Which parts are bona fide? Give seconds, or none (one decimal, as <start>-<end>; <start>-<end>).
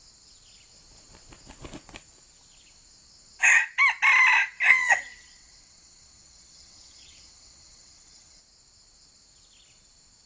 0.0-4.7; 8.4-10.3